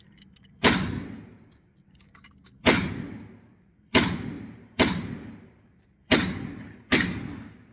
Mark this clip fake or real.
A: fake